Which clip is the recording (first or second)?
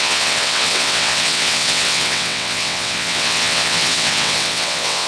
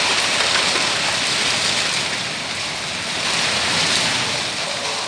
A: second